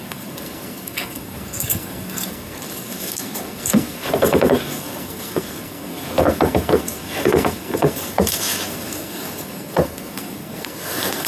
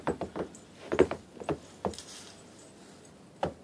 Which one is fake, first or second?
first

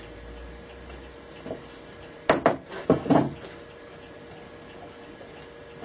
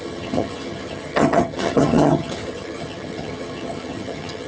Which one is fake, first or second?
second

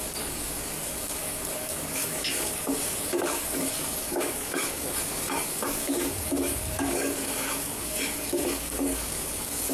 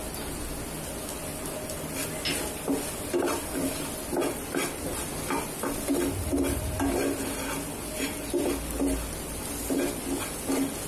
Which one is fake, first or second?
first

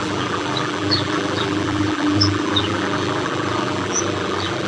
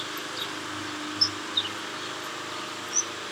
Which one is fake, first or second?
first